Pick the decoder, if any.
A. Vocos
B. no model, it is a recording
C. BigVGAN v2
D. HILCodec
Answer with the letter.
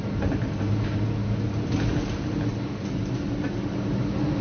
B